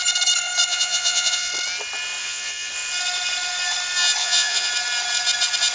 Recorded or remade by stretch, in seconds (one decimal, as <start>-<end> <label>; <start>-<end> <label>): 0.0-0.7 recorded; 0.7-1.5 remade; 1.5-2.2 recorded; 2.2-2.7 remade; 2.7-4.2 recorded; 4.2-4.7 remade; 4.7-5.7 recorded